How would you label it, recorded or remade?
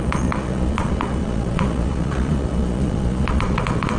remade